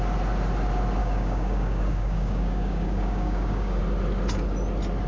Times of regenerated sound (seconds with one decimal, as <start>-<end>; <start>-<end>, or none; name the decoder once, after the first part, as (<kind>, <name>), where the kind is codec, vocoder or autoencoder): 1.0-3.8 (codec, DAC)